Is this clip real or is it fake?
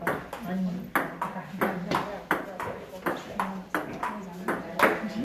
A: real